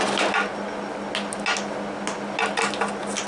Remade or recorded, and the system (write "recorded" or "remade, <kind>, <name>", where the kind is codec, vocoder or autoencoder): recorded